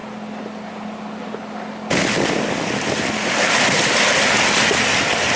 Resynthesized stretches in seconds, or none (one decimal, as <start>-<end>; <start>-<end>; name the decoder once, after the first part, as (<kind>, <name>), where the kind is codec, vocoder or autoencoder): none